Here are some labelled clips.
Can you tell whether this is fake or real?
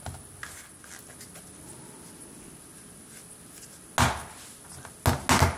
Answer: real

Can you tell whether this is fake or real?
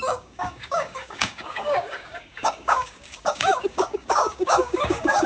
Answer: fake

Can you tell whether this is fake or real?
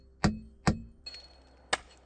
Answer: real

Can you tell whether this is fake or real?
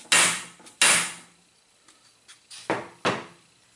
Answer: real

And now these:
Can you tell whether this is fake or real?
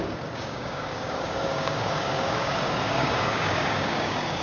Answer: fake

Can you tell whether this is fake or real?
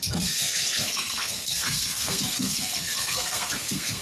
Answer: fake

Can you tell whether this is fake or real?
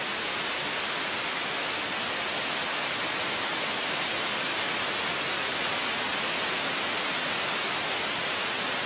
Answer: real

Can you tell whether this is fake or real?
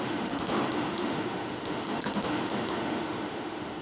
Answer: fake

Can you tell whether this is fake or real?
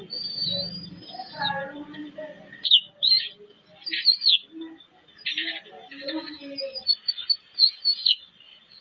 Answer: real